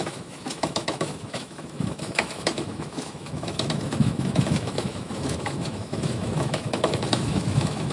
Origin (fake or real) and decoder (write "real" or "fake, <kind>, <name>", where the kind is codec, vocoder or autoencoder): fake, autoencoder, DAC-VAE